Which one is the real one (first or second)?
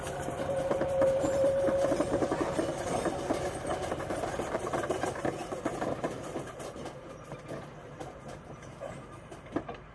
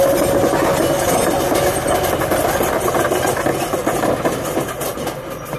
second